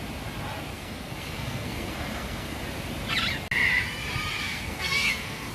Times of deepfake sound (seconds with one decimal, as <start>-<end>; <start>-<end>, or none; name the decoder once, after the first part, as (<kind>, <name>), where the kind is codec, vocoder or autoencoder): 0.7-2.6 (codec, SNAC); 4.4-5.5